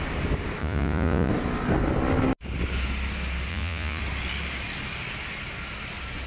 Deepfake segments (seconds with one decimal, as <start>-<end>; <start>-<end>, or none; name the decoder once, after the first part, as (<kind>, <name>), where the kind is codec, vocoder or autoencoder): 0.6-1.3 (vocoder, Vocos); 3.5-4.0